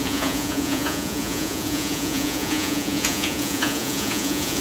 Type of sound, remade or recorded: remade